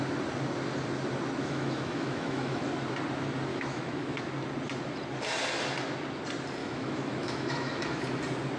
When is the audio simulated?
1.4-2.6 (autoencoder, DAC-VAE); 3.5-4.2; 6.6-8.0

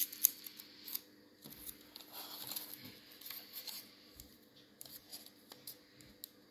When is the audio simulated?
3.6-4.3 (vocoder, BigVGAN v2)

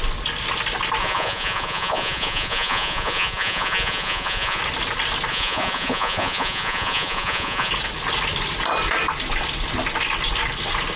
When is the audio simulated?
1.0-4.6 (vocoder, Vocos); 5.3-7.7